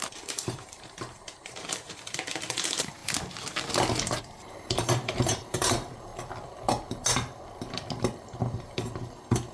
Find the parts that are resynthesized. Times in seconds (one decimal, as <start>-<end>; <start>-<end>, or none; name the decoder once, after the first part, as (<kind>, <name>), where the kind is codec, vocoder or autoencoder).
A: 0.0-3.0 (vocoder, BigVGAN v2); 4.2-6.1; 8.0-9.5